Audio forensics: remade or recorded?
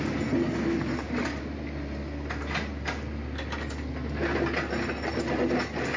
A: recorded